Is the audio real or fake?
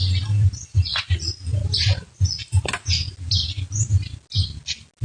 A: real